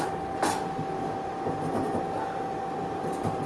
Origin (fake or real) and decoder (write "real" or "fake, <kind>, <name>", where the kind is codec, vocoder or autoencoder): real